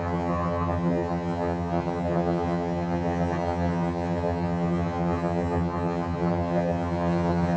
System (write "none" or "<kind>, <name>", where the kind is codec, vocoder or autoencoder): vocoder, HiFi-GAN